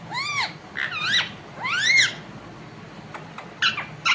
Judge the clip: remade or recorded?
recorded